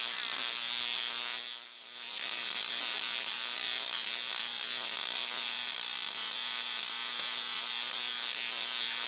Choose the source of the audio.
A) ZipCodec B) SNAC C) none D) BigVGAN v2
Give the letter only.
C